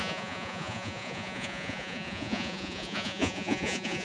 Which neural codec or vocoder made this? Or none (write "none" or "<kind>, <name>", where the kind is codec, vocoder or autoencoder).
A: vocoder, Vocos